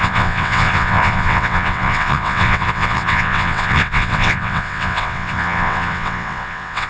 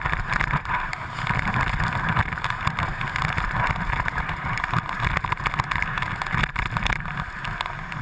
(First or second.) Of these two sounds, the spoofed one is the first